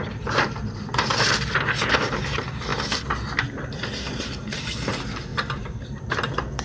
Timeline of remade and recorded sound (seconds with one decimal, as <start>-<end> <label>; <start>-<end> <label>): 0.0-1.1 remade; 1.1-2.1 recorded; 2.1-2.7 remade; 2.7-4.2 recorded; 4.2-6.6 remade